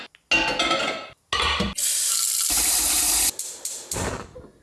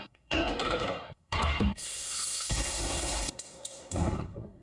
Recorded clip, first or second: first